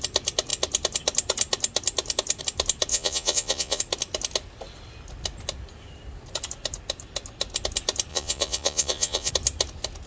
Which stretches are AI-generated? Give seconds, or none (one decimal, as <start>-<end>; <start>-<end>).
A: 2.9-3.8; 8.1-9.3